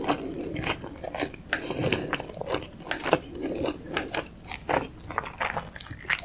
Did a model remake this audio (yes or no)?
no